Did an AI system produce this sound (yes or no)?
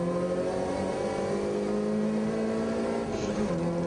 no